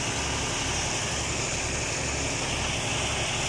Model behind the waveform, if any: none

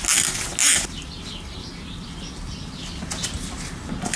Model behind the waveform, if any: none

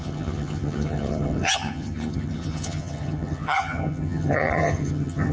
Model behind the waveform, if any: vocoder, HiFi-GAN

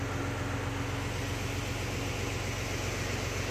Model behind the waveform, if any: none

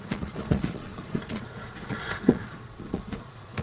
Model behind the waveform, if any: vocoder, Vocos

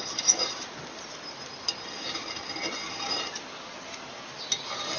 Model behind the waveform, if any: none